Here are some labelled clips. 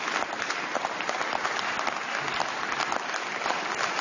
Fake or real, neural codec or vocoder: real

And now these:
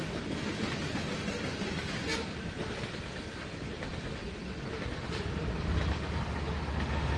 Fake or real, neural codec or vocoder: real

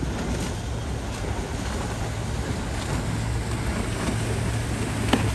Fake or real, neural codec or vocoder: real